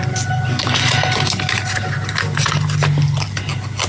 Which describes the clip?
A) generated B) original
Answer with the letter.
B